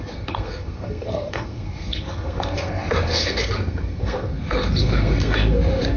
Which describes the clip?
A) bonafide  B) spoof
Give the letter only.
B